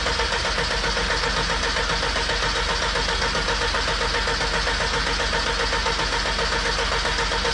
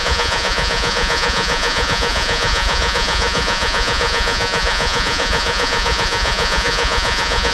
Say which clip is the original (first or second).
first